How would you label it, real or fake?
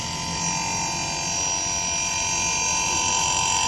real